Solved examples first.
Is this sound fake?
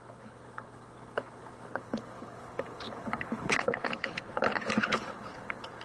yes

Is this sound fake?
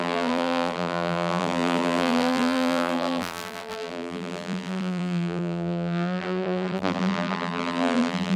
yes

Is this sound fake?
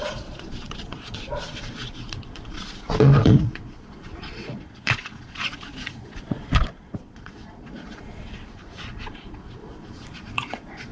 yes